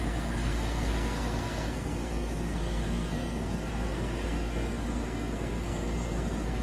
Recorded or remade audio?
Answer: remade